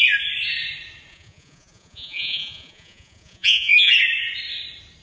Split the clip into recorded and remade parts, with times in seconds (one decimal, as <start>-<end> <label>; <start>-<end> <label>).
0.0-1.1 recorded; 1.1-3.9 remade; 3.9-5.0 recorded